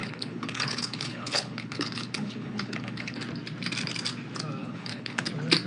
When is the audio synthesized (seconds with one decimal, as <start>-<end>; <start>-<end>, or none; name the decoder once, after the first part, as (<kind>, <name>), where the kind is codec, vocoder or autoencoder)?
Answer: 0.0-3.2 (codec, HILCodec); 4.6-5.3